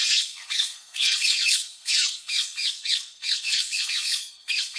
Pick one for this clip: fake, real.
fake